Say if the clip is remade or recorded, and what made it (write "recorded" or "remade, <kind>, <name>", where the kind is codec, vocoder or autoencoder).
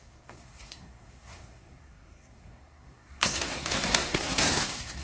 remade, codec, SNAC